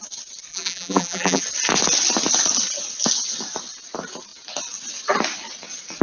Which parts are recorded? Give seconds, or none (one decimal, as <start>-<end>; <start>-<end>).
0.0-0.5; 1.4-6.0